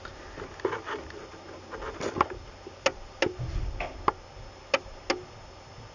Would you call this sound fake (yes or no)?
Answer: no